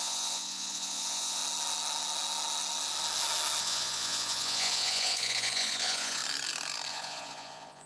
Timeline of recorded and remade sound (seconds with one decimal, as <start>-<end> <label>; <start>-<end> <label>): 0.0-1.4 remade; 1.4-3.6 recorded; 3.6-6.2 remade; 6.2-6.9 recorded; 6.9-7.9 remade